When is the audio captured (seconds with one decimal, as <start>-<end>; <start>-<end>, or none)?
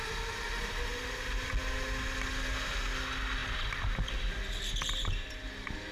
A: 0.0-5.9